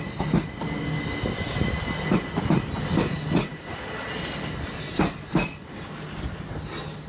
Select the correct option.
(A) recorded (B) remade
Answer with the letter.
A